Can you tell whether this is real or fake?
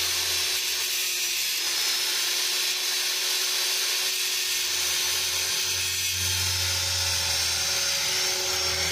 real